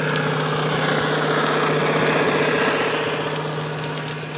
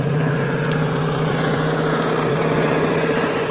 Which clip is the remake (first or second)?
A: second